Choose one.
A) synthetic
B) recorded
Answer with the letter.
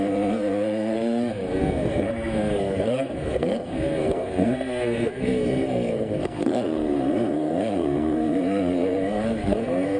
A